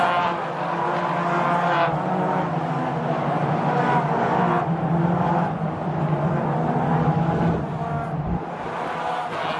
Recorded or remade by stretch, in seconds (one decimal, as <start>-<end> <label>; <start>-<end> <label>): 0.0-9.6 recorded

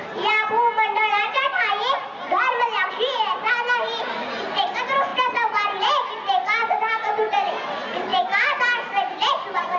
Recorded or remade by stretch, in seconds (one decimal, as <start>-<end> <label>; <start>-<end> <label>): 0.0-9.8 recorded

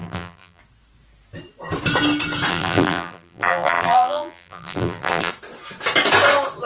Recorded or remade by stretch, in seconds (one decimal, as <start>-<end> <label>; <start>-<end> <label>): 0.0-0.6 remade; 0.6-2.5 recorded; 2.5-5.3 remade; 5.3-6.7 recorded

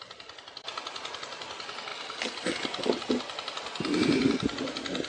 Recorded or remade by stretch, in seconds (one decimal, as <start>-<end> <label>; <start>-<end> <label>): 0.0-5.1 recorded